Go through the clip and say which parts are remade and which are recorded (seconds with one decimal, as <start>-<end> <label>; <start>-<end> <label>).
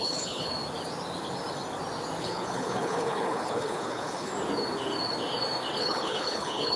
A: 0.0-0.5 remade; 0.5-2.2 recorded; 2.2-4.3 remade; 4.3-5.8 recorded; 5.8-6.8 remade